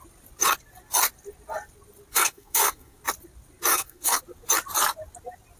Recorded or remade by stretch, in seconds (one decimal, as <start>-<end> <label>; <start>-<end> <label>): 0.0-2.1 recorded; 2.1-3.0 remade; 3.0-3.7 recorded; 3.7-4.2 remade; 4.2-5.6 recorded

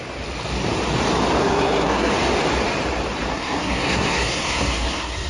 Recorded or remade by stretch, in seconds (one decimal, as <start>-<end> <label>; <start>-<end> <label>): 0.0-1.4 recorded; 1.4-2.1 remade; 2.1-3.3 recorded; 3.3-5.3 remade

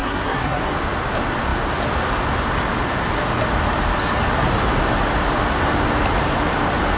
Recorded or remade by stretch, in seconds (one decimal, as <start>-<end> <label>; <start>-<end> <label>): 0.0-0.6 remade; 0.6-7.0 recorded

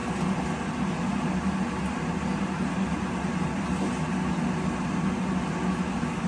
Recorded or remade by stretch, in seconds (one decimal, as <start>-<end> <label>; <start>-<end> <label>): 0.0-6.3 recorded

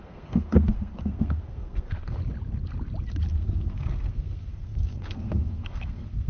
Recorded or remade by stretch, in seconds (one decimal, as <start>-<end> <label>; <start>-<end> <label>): 0.0-2.2 remade; 2.2-3.3 recorded; 3.3-6.3 remade

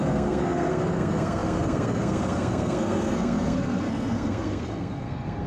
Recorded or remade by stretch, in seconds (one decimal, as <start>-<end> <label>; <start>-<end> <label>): 0.0-5.5 remade

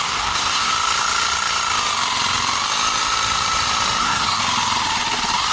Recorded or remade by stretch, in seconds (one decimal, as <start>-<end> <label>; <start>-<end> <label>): 0.0-0.7 remade; 0.7-4.0 recorded; 4.0-4.4 remade; 4.4-5.5 recorded

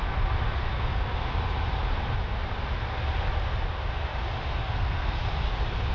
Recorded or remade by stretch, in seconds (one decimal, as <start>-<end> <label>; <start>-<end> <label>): 0.0-0.7 recorded; 0.7-1.2 remade; 1.2-4.6 recorded; 4.6-5.2 remade; 5.2-5.9 recorded